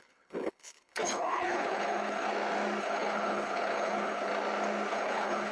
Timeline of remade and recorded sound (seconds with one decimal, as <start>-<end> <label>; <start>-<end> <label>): 0.0-2.3 remade; 2.3-2.8 recorded; 2.8-4.3 remade; 4.3-4.9 recorded; 4.9-5.5 remade